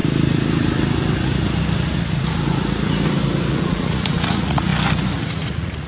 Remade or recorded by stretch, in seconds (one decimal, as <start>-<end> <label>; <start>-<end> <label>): 0.0-3.5 recorded; 3.5-4.7 remade; 4.7-5.2 recorded; 5.2-5.9 remade